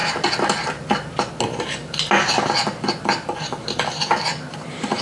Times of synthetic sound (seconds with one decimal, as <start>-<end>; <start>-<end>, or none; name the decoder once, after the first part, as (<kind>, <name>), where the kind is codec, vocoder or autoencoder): none